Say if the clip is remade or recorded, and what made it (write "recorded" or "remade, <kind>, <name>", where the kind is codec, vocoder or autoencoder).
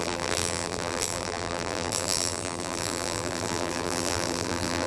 remade, vocoder, BigVGAN v2